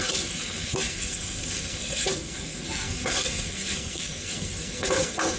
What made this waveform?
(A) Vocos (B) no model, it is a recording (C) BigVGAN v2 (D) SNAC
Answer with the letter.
D